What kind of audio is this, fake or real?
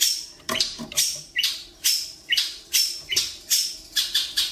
fake